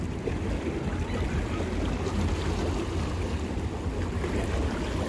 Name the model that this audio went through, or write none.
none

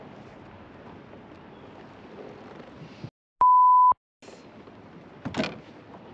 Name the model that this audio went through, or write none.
none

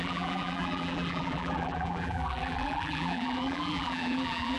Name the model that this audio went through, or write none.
vocoder, BigVGAN v2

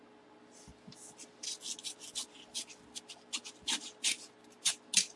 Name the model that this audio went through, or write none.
none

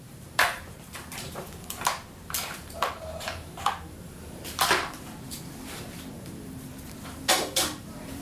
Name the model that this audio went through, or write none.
vocoder, BigVGAN v2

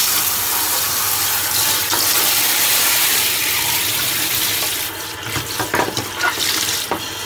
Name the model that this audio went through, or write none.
vocoder, BigVGAN v2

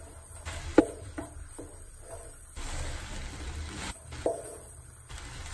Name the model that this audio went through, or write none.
none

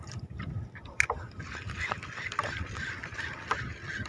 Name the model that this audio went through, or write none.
none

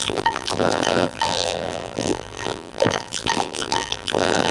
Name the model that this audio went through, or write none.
vocoder, BigVGAN v2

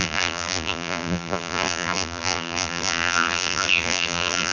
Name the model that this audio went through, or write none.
vocoder, BigVGAN v2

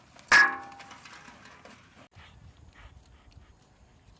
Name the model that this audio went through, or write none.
none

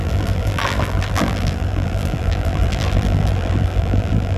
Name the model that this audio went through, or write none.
vocoder, BigVGAN v2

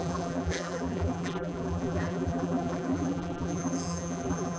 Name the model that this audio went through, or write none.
vocoder, BigVGAN v2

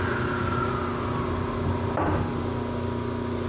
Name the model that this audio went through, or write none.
none